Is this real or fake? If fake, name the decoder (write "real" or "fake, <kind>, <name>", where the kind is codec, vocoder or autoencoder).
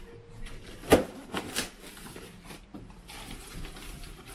real